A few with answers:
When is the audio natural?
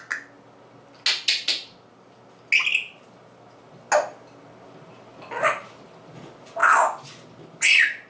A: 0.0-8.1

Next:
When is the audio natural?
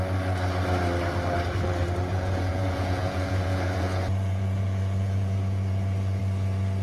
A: 0.0-2.1; 6.2-6.8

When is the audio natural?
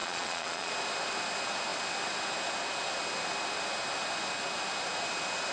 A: 0.7-5.5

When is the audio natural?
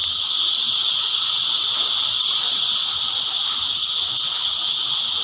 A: 0.0-0.5; 1.2-1.8; 2.8-5.2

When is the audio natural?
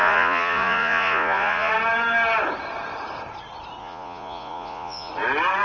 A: 1.7-3.8; 5.1-5.6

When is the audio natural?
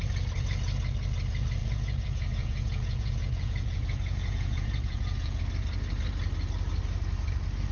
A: 0.0-1.6; 5.4-7.7